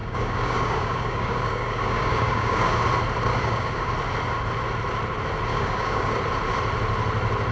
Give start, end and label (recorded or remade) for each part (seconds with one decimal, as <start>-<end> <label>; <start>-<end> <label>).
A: 0.0-2.8 remade; 2.8-3.3 recorded; 3.3-3.9 remade; 3.9-5.5 recorded; 5.5-6.2 remade; 6.2-7.5 recorded